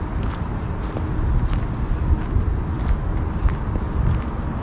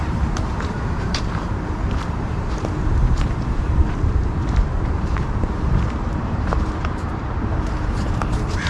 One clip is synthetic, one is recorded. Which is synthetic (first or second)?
second